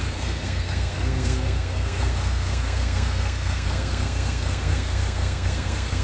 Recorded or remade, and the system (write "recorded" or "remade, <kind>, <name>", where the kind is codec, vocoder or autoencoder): remade, codec, SNAC